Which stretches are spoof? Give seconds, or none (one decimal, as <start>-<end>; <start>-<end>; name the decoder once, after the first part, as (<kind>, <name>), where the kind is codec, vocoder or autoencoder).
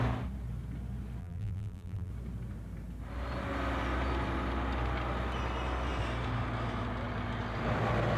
1.2-2.1 (vocoder, BigVGAN v2)